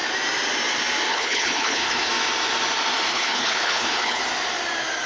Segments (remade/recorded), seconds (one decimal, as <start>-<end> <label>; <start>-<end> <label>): 0.0-1.1 recorded; 1.1-2.1 remade; 2.1-3.1 recorded; 3.1-4.2 remade; 4.2-5.1 recorded